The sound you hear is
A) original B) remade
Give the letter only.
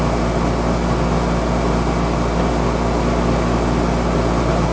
A